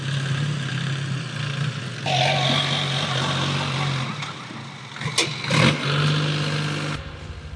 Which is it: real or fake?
real